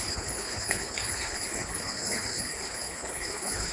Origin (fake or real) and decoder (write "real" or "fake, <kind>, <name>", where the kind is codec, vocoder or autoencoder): fake, codec, HILCodec